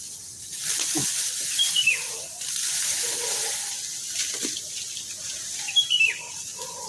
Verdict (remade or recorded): recorded